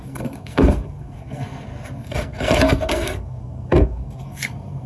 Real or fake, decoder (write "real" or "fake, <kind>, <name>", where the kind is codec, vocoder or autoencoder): fake, codec, SNAC